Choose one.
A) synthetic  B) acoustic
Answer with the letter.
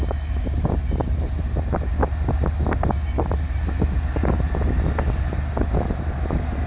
B